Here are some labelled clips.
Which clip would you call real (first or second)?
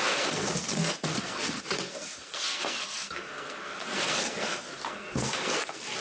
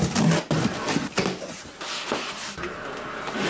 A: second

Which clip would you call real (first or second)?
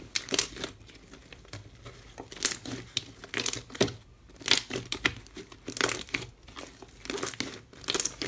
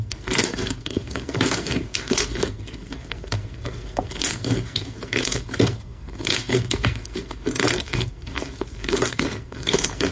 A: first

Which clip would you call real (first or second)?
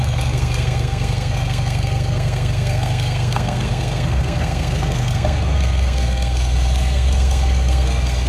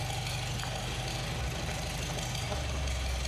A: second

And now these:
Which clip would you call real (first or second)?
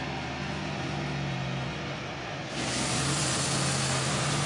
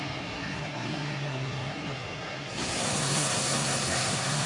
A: first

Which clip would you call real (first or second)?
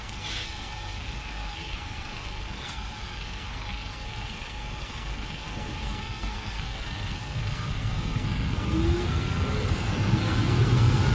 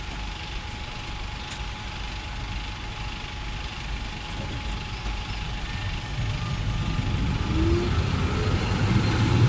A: second